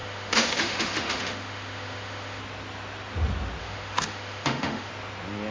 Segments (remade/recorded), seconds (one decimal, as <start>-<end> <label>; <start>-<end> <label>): 0.0-2.4 remade; 2.4-3.6 recorded; 3.6-4.9 remade; 4.9-5.5 recorded